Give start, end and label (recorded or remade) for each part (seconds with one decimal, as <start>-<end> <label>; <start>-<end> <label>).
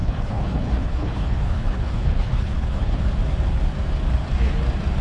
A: 0.0-3.0 remade; 3.0-5.0 recorded